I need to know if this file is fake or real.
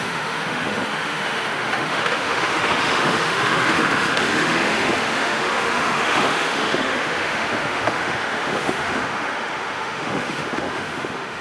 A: fake